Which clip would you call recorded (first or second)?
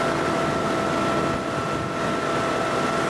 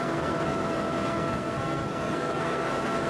first